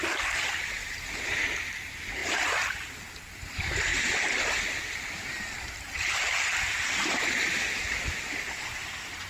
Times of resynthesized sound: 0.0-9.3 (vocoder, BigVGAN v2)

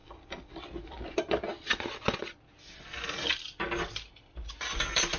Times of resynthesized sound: none

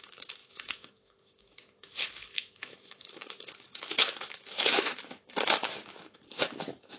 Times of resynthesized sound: 0.0-7.0 (autoencoder, DAC-VAE)

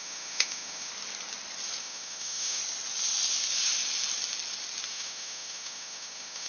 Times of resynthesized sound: 0.0-0.9 (autoencoder, DAC-VAE); 1.8-2.6; 4.9-6.5